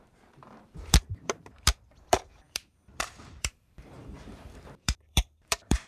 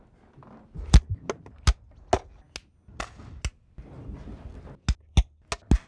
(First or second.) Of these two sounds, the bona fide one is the second